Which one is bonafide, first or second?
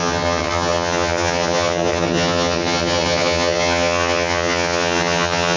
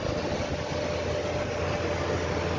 second